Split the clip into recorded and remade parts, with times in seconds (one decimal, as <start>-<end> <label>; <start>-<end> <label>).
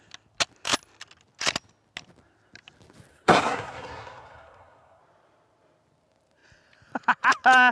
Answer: 0.0-3.1 recorded; 3.1-5.0 remade; 5.0-7.7 recorded